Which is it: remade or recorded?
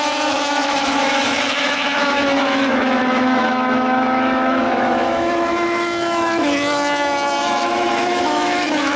remade